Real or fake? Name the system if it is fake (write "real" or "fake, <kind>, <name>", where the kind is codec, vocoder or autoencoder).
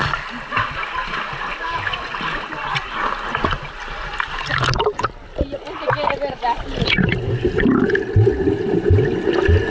real